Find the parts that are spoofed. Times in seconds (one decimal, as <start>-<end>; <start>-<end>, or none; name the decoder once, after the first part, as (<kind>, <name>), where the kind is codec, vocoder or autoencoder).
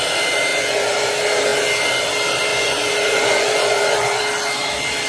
0.5-1.1 (vocoder, Vocos); 2.5-4.2